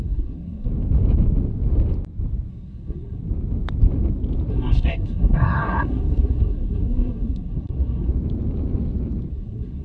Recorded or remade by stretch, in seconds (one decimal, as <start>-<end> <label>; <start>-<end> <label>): 0.0-0.7 remade; 0.7-2.5 recorded; 2.5-3.2 remade; 3.2-4.5 recorded; 4.5-8.1 remade; 8.1-9.3 recorded; 9.3-9.8 remade